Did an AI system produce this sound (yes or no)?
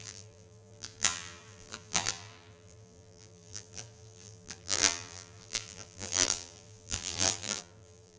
yes